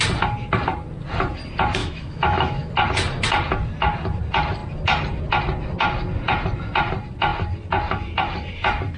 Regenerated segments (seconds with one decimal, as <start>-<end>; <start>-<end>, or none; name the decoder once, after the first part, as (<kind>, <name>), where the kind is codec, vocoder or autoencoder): 1.8-2.7 (autoencoder, DAC-VAE)